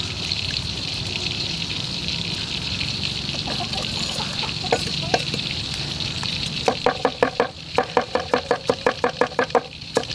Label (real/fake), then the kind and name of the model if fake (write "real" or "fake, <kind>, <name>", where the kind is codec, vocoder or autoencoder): fake, vocoder, BigVGAN v2